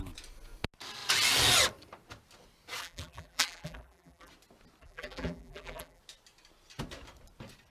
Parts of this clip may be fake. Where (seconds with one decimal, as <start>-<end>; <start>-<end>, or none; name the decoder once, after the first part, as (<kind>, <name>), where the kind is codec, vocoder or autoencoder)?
2.8-4.3 (vocoder, BigVGAN v2); 4.8-6.0